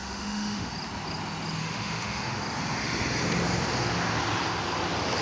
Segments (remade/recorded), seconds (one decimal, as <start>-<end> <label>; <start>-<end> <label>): 0.0-0.7 remade; 0.7-1.6 recorded; 1.6-2.4 remade; 2.4-5.2 recorded